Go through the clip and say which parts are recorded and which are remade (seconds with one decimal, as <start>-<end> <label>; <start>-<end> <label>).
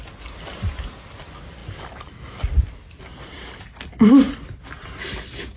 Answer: 0.0-5.6 recorded